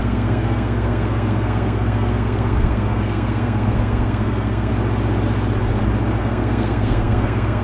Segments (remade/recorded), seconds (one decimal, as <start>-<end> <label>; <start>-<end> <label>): 0.0-4.7 remade; 4.7-6.2 recorded; 6.2-7.6 remade

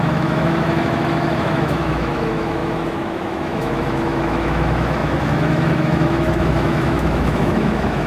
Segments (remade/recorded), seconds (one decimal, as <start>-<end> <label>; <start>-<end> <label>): 0.0-8.1 remade

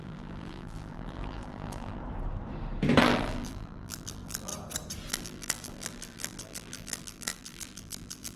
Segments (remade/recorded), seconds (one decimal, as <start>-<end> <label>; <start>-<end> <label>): 0.0-2.0 remade; 2.0-3.0 recorded; 3.0-4.5 remade; 4.5-5.1 recorded; 5.1-8.4 remade

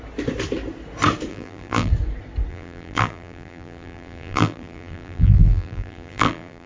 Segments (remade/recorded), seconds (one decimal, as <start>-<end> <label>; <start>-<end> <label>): 0.0-1.3 recorded; 1.3-1.9 remade; 1.9-2.5 recorded; 2.5-6.7 remade

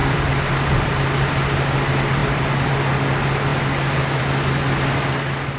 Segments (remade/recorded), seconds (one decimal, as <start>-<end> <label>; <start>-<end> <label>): 0.0-0.9 remade; 0.9-2.2 recorded; 2.2-2.7 remade; 2.7-5.6 recorded

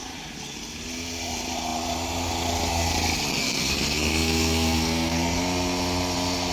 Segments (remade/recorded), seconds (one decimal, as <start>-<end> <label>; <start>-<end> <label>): 0.0-3.3 recorded; 3.3-5.4 remade; 5.4-6.5 recorded